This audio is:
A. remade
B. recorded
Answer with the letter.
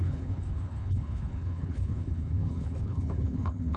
A